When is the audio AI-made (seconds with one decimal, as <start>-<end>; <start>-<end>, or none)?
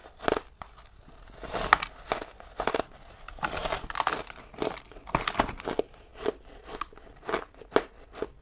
none